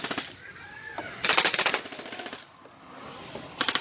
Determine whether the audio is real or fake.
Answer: real